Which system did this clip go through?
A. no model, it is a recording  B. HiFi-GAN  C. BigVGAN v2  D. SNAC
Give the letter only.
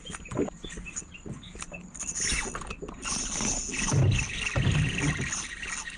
A